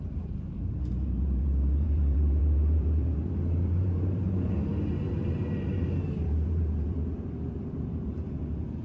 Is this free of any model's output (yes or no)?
no